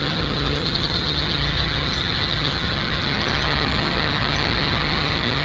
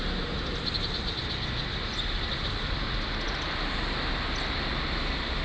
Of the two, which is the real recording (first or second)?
second